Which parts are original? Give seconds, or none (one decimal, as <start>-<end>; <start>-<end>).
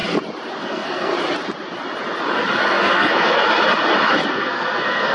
0.0-0.6; 1.1-2.6; 3.4-4.3